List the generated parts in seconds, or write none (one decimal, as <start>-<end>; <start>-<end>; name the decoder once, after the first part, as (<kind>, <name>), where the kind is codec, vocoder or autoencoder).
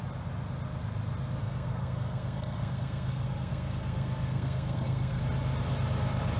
1.4-5.2 (codec, SNAC)